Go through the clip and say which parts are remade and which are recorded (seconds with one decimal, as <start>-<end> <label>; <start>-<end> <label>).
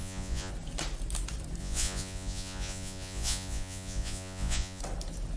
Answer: 0.0-0.5 remade; 0.5-1.6 recorded; 1.6-4.8 remade; 4.8-5.4 recorded